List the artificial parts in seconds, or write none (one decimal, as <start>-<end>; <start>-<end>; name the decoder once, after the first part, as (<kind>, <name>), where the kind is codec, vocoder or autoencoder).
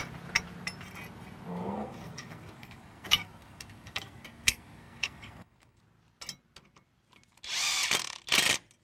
1.5-5.8 (codec, SNAC)